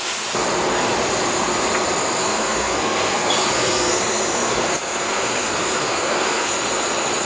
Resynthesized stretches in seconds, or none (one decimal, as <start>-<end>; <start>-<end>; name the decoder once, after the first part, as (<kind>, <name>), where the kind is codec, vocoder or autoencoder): 2.2-6.5 (codec, SNAC)